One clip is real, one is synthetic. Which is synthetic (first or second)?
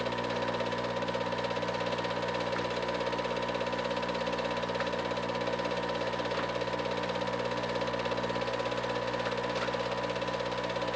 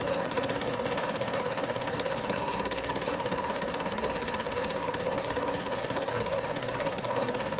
second